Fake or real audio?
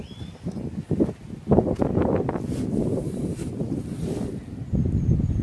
real